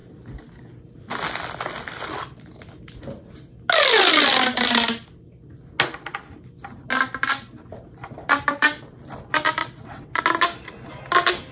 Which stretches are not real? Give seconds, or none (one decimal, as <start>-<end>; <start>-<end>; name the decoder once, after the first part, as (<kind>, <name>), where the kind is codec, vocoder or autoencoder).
9.6-10.2 (vocoder, WaveNeXt)